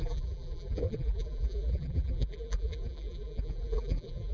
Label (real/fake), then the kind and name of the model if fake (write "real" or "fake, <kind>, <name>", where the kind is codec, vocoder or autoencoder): fake, vocoder, BigVGAN v2